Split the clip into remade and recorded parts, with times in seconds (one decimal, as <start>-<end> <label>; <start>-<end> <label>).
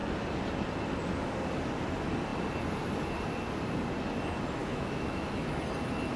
0.0-4.6 recorded; 4.6-5.6 remade; 5.6-6.2 recorded